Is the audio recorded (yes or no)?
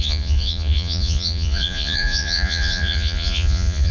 no